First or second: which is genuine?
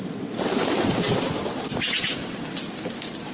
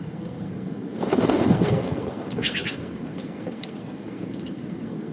first